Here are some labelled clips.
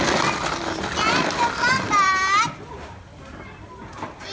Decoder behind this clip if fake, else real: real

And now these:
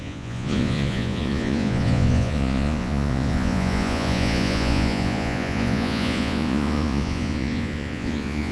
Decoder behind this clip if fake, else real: fake, vocoder, Vocos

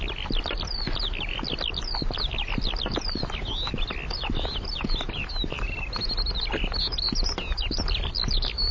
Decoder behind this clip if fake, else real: real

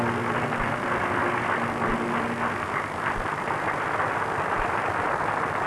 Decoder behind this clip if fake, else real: real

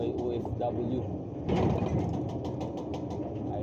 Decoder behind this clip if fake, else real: real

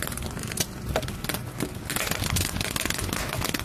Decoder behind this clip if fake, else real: real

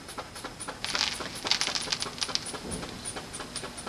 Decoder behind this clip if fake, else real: real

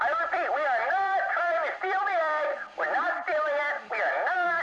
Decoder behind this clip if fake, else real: fake, vocoder, BigVGAN v2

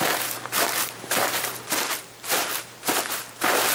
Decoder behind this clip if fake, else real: fake, vocoder, BigVGAN v2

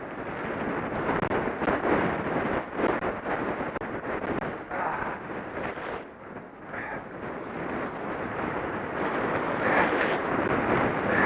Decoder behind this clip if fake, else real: real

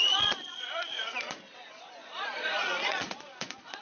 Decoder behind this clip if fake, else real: fake, vocoder, Vocos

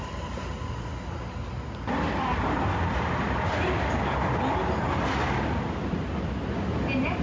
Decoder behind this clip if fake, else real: real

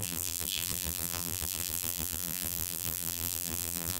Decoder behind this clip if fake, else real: fake, vocoder, BigVGAN v2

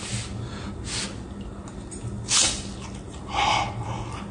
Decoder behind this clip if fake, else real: real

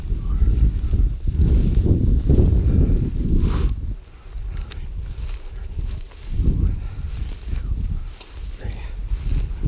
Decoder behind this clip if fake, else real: real